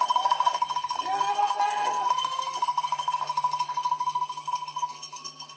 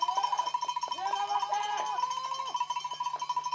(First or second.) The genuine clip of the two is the second